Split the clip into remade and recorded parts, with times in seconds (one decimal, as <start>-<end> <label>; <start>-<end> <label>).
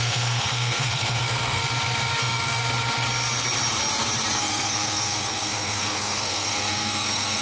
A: 0.0-1.6 remade; 1.6-2.2 recorded; 2.2-2.6 remade; 2.6-4.4 recorded; 4.4-7.4 remade